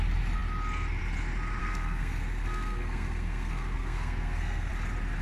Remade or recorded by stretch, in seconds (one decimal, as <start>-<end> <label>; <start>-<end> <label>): 0.0-1.6 recorded; 1.6-4.7 remade; 4.7-5.2 recorded